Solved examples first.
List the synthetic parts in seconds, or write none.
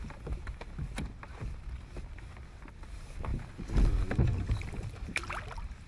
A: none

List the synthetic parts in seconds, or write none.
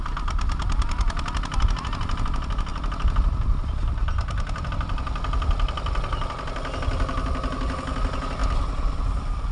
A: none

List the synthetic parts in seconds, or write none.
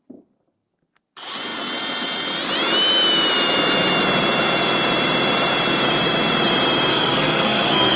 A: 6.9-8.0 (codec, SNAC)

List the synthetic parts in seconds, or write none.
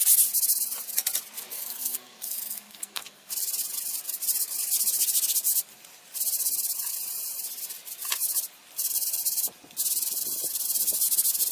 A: 1.5-3.3 (codec, SNAC)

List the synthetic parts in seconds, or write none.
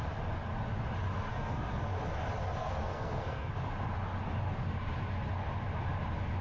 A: 1.3-1.8 (codec, SNAC); 2.6-3.5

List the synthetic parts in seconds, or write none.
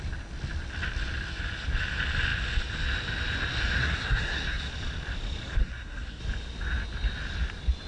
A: 3.8-4.7 (codec, SNAC); 5.6-6.2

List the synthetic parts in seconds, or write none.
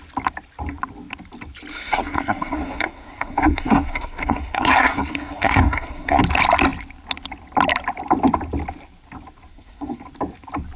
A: 1.7-6.2 (codec, SNAC); 9.5-10.0